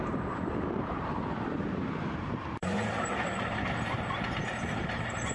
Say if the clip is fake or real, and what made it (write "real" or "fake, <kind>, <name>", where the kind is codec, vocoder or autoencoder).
fake, vocoder, BigVGAN v2